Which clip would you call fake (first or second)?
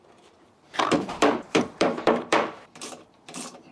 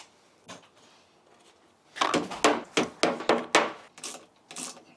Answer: first